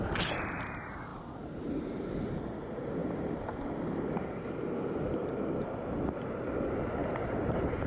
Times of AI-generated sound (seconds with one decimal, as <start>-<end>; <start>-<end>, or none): 1.1-2.3; 3.0-5.4; 7.0-7.9